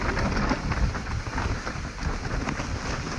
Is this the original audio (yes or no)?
yes